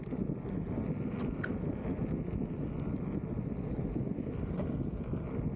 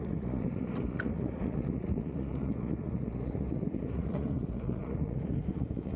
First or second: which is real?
first